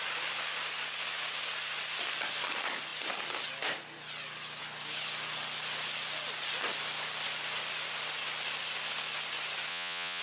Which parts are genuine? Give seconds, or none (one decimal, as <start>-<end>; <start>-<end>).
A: 0.0-9.7